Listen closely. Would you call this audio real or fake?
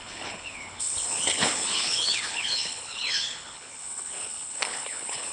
fake